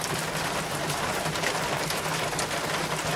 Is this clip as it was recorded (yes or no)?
yes